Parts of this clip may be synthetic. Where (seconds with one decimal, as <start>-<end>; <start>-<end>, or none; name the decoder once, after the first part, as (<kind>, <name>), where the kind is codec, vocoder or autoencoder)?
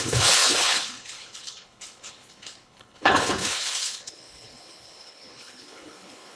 0.0-6.4 (codec, HILCodec)